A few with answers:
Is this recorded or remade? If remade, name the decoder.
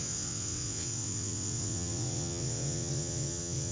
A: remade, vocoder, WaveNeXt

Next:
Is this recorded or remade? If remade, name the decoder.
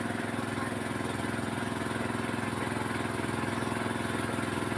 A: recorded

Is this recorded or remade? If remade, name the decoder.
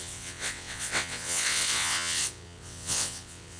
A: remade, vocoder, WaveNeXt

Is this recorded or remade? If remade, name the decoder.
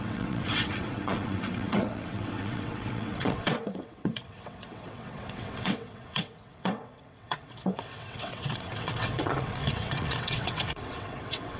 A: remade, vocoder, WaveNeXt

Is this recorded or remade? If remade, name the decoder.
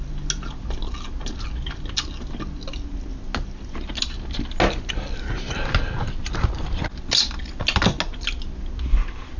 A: recorded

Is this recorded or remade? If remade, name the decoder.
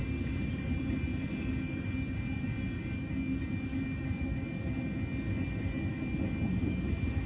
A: recorded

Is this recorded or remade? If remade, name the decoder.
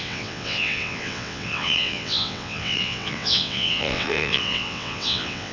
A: remade, vocoder, WaveNeXt